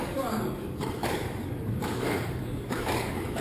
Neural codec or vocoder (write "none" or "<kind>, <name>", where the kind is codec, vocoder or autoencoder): codec, DAC